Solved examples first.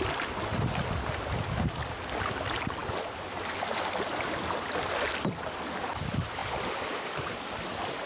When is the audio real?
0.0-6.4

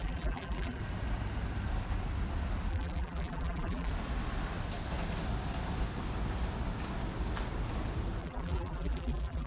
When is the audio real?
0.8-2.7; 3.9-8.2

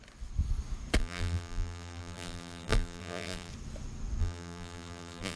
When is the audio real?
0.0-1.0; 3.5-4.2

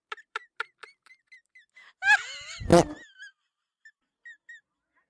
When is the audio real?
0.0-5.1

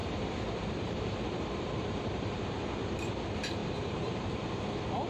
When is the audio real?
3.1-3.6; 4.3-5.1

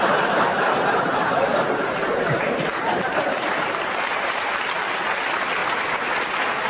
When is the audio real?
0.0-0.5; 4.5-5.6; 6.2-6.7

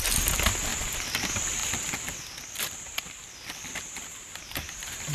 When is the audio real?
0.0-0.7; 1.2-1.6; 4.4-5.1

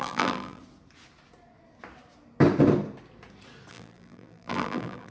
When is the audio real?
0.6-3.7